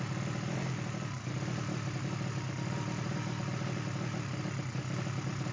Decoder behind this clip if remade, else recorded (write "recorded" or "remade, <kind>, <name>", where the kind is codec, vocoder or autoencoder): recorded